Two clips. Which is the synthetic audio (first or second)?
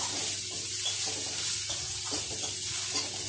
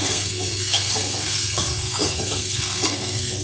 second